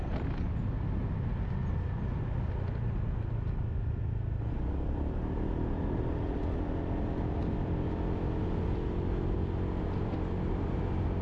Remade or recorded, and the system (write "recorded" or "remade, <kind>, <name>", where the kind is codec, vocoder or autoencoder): recorded